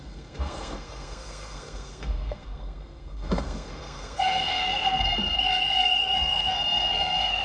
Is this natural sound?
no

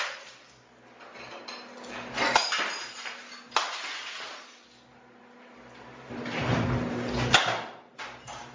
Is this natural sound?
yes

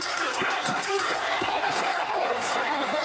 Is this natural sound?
no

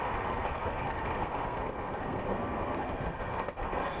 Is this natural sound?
no